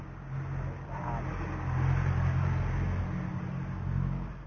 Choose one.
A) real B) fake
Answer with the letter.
A